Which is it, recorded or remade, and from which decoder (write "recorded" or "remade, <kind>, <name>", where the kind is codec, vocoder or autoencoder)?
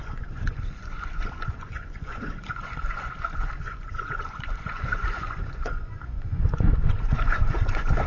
remade, vocoder, Vocos